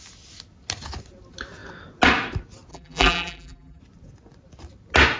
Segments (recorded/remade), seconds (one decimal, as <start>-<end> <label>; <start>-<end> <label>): 0.0-2.7 recorded; 2.7-3.8 remade; 3.8-5.2 recorded